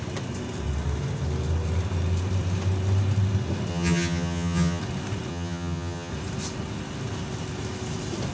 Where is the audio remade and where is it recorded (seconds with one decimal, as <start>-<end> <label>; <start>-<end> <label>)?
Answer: 0.0-3.7 recorded; 3.7-4.8 remade; 4.8-5.3 recorded; 5.3-6.1 remade; 6.1-8.3 recorded

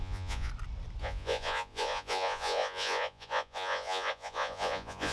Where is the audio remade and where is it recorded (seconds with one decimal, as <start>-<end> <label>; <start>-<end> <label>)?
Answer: 0.0-0.5 remade; 0.5-1.0 recorded; 1.0-5.1 remade

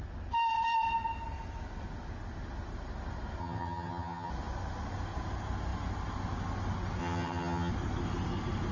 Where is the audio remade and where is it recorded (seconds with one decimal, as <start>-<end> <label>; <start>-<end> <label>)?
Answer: 0.0-3.4 recorded; 3.4-4.3 remade; 4.3-7.0 recorded; 7.0-7.7 remade; 7.7-8.7 recorded

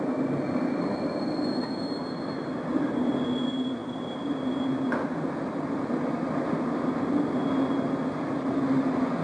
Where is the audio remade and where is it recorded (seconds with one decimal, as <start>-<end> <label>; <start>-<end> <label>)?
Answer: 0.0-9.2 recorded

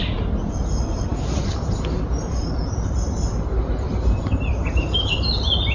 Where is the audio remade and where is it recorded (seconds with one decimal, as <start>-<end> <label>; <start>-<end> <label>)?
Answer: 0.0-5.7 recorded